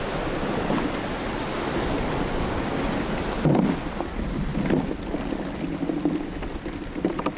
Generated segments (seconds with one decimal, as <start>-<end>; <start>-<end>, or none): none